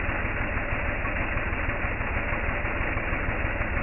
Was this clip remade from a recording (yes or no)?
no